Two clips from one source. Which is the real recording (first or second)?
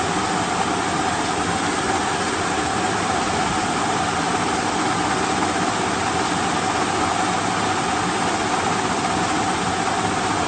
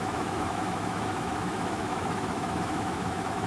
first